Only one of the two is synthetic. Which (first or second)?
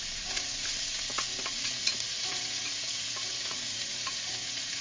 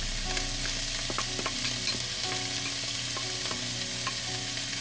first